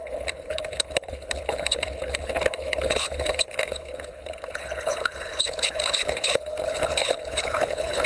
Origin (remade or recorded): remade